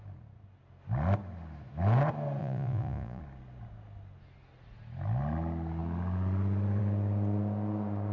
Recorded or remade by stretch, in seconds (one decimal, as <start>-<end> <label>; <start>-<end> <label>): 0.0-2.4 recorded; 2.4-3.2 remade; 3.2-8.1 recorded